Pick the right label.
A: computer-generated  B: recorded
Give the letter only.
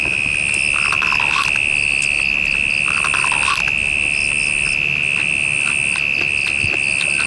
B